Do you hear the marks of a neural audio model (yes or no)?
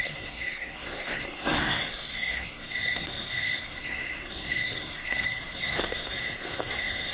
yes